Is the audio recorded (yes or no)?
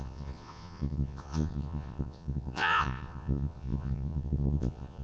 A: no